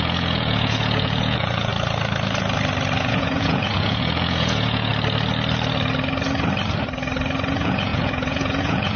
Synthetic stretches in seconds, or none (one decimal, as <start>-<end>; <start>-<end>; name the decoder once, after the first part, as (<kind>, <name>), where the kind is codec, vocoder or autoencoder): 0.0-1.7 (vocoder, Vocos); 3.0-4.9; 7.5-9.0